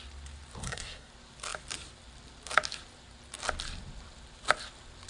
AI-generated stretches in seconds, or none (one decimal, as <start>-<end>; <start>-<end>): 0.6-1.1